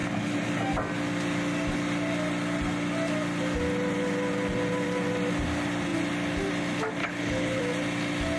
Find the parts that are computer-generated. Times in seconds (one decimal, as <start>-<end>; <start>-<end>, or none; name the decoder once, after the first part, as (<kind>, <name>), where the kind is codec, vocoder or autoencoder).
7.0-7.6 (codec, HILCodec)